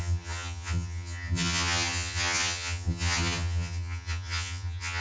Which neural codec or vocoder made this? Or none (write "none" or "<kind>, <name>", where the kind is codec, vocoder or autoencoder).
vocoder, HiFi-GAN